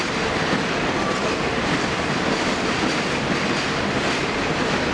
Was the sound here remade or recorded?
recorded